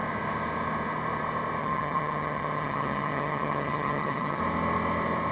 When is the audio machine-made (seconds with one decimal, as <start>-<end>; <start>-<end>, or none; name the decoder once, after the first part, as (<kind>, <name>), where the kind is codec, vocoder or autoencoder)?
1.6-4.4 (vocoder, HiFi-GAN)